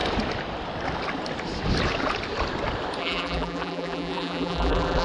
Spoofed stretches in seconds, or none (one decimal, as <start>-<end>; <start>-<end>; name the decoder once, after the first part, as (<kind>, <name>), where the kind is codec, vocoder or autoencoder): 3.0-5.0 (vocoder, BigVGAN v2)